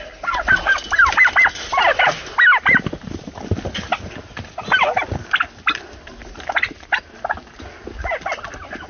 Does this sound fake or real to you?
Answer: real